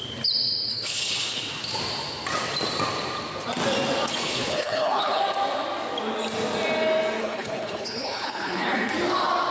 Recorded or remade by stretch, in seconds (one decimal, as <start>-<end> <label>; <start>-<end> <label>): 0.0-0.7 recorded; 0.7-1.4 remade; 1.4-4.1 recorded; 4.1-5.2 remade; 5.2-7.2 recorded; 7.2-8.9 remade; 8.9-9.5 recorded